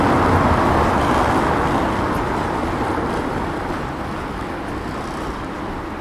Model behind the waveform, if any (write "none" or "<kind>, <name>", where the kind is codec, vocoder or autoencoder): none